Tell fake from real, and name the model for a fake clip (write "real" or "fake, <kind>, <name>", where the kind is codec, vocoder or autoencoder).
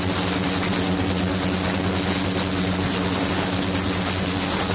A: real